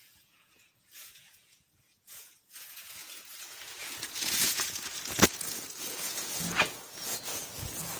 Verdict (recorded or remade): remade